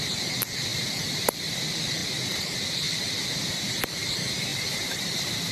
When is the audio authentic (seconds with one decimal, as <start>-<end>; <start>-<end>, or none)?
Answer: 0.0-0.7; 1.6-4.5